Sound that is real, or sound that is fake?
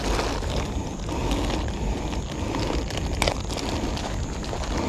real